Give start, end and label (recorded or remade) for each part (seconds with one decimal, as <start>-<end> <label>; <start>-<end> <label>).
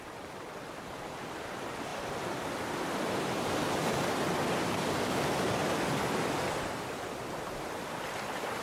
0.0-8.6 recorded